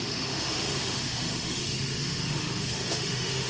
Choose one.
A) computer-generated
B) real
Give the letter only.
A